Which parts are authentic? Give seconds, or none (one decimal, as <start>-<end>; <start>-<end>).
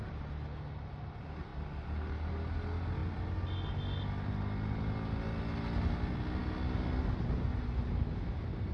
0.0-8.7